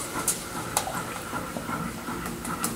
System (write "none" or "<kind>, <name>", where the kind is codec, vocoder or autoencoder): none